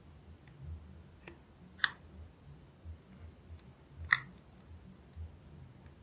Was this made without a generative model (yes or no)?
yes